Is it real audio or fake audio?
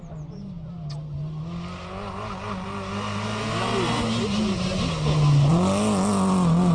real